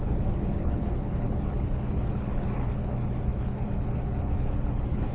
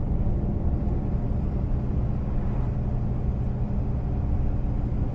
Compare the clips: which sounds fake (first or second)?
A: first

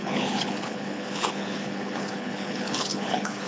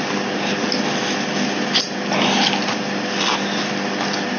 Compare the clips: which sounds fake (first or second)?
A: first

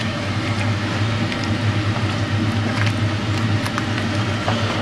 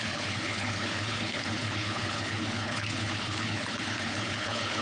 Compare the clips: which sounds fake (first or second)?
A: second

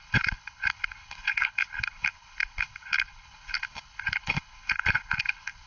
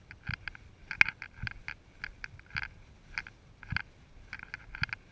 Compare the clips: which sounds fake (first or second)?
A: first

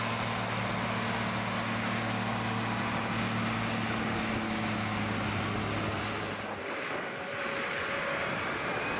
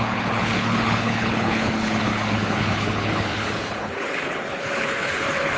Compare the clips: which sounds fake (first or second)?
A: second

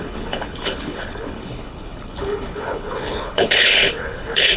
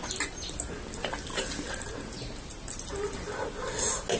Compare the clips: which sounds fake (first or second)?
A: first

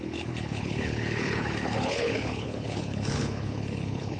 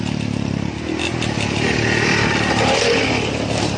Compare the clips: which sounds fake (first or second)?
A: first